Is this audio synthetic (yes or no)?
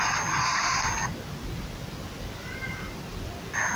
no